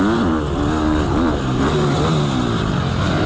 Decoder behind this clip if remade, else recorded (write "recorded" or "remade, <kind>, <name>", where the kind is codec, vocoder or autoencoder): recorded